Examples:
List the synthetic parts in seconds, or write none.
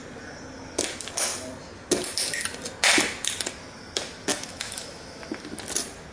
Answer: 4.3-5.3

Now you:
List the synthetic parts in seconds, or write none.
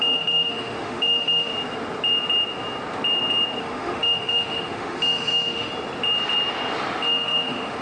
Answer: 0.0-1.5; 3.6-5.7; 7.0-7.8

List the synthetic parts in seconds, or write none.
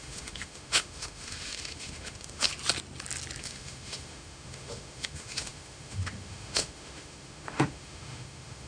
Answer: 0.0-2.5; 3.4-8.7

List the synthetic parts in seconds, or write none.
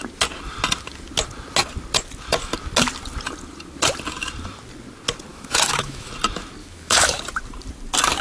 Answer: 5.3-6.1; 6.6-7.2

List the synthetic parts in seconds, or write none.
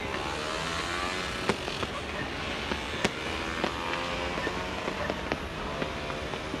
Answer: none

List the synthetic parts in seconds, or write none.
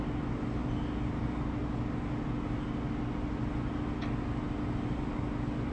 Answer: none